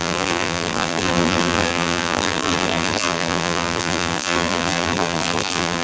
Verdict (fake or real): fake